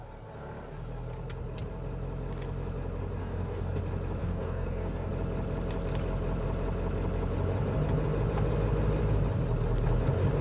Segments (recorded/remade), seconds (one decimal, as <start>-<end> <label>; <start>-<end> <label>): 0.0-3.2 recorded; 3.2-3.8 remade; 3.8-4.2 recorded; 4.2-5.1 remade; 5.1-10.4 recorded